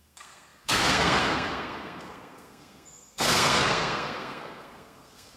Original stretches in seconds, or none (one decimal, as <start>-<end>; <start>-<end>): none